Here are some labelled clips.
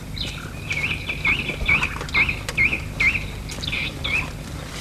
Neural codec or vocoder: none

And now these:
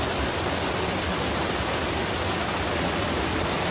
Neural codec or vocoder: none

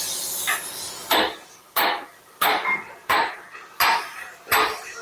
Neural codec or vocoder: none